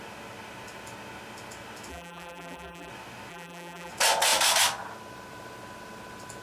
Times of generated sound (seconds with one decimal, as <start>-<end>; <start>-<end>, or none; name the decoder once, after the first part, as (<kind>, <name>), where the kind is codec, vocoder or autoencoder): 1.9-2.9 (vocoder, BigVGAN v2); 3.3-3.9